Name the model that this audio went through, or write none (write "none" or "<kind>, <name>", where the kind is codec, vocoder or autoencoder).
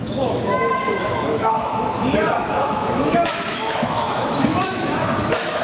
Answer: autoencoder, DAC-VAE